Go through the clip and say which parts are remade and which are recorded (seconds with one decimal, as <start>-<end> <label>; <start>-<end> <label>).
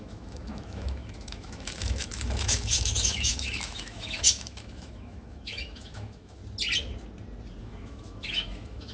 0.0-6.4 remade; 6.4-7.6 recorded; 7.6-8.9 remade